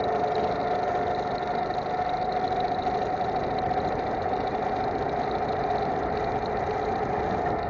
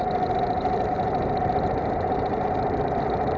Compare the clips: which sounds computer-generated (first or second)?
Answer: second